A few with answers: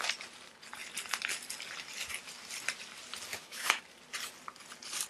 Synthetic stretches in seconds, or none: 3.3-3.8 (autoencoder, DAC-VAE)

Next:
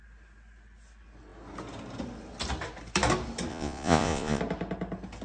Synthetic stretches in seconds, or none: 3.5-4.4 (vocoder, Vocos)

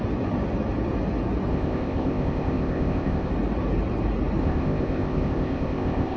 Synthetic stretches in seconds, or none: 1.5-3.3 (codec, ZipCodec); 4.4-6.2

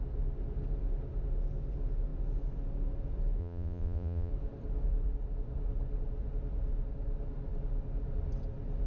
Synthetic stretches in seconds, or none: 3.4-4.3 (vocoder, Vocos)

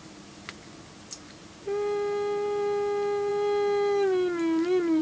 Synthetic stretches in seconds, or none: none

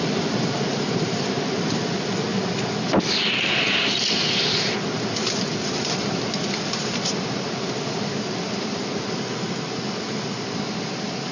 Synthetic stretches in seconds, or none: none

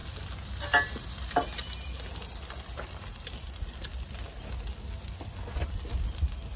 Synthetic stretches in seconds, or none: none

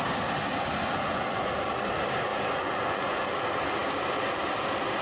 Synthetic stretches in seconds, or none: 0.8-1.5 (vocoder, Vocos); 2.3-3.3